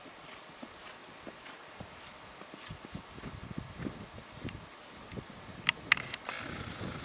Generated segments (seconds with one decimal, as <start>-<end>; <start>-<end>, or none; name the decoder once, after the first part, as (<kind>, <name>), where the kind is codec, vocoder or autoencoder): 1.0-4.7 (vocoder, BigVGAN v2)